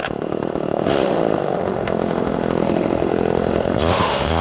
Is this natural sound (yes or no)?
no